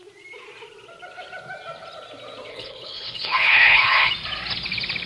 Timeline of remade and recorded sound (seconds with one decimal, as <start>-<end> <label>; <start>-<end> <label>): 0.0-2.5 recorded; 2.5-4.1 remade; 4.1-5.1 recorded